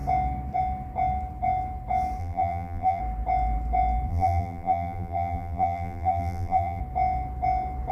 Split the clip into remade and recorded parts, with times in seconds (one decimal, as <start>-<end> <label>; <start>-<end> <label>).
0.0-2.2 recorded; 2.2-3.0 remade; 3.0-4.1 recorded; 4.1-6.8 remade; 6.8-7.9 recorded